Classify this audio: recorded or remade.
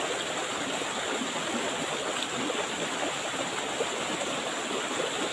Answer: recorded